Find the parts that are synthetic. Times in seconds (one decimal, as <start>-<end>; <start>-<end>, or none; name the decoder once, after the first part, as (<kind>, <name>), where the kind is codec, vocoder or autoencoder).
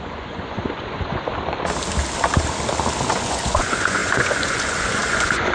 0.0-1.3 (vocoder, Vocos); 3.1-5.5